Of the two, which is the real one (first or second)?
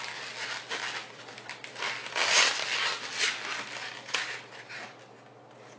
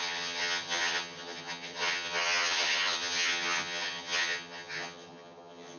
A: first